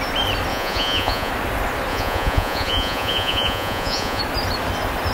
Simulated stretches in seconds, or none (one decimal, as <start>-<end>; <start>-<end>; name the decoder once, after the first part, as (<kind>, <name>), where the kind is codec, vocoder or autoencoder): 0.5-1.3 (vocoder, Vocos); 1.9-4.2